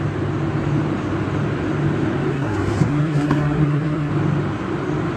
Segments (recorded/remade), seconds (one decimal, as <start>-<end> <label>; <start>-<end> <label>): 0.0-2.3 recorded; 2.3-4.1 remade; 4.1-5.2 recorded